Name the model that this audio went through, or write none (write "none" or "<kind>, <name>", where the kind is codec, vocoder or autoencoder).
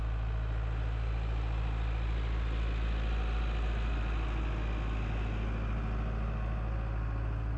none